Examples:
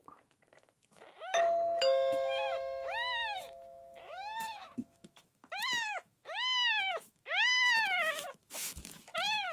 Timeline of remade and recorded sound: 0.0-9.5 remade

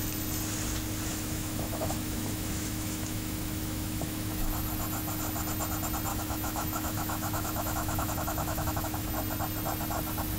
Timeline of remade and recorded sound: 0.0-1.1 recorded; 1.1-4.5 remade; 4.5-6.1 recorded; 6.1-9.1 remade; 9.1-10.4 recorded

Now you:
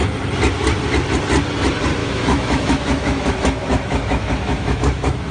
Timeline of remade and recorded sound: 0.0-2.0 recorded; 2.0-5.3 remade

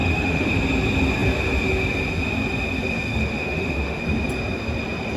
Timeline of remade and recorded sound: 0.0-0.5 remade; 0.5-3.1 recorded; 3.1-4.0 remade; 4.0-5.2 recorded

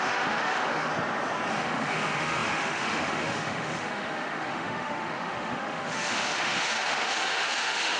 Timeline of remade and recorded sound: 0.0-0.9 remade; 0.9-1.5 recorded; 1.5-8.0 remade